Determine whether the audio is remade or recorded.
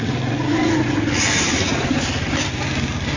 recorded